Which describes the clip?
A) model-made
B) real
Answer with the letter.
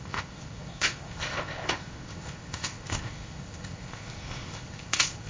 A